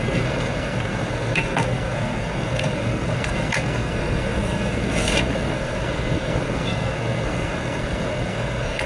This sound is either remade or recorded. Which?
remade